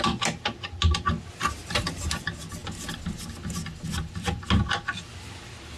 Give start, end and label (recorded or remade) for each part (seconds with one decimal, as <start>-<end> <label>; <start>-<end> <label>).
0.0-5.8 recorded